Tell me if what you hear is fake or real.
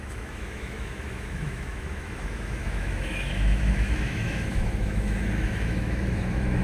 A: fake